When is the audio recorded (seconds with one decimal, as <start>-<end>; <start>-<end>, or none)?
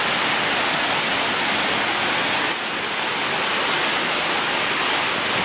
0.0-5.4